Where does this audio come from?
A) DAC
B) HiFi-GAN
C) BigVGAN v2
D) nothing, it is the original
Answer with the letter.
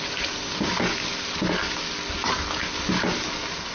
D